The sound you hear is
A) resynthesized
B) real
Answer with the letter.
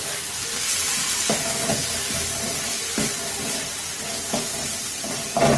B